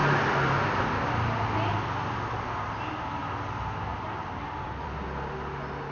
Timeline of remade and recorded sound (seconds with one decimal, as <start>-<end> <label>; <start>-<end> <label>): 0.0-3.9 recorded; 3.9-5.0 remade; 5.0-5.9 recorded